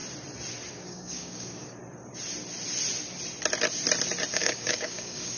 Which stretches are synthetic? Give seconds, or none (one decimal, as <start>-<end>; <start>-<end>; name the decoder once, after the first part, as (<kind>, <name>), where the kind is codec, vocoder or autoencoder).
0.7-1.8 (codec, DAC); 4.3-5.4